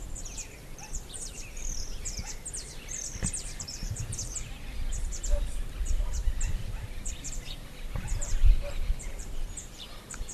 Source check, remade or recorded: remade